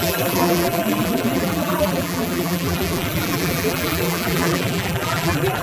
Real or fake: fake